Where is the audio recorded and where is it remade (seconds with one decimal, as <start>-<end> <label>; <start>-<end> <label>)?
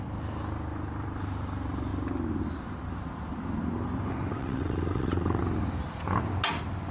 0.0-4.3 recorded; 4.3-5.4 remade; 5.4-6.9 recorded